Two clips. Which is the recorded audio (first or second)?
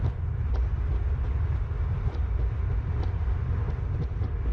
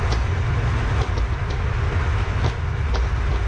second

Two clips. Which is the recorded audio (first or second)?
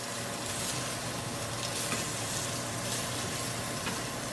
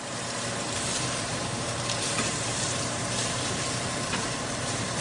first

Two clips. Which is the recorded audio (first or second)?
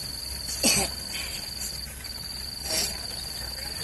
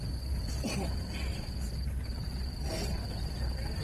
first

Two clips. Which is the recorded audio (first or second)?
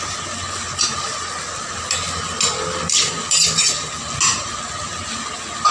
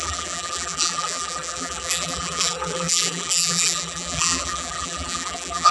first